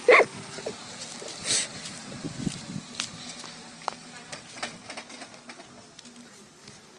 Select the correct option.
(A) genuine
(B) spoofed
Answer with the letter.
A